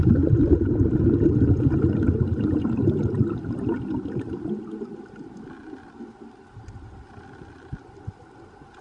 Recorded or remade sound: recorded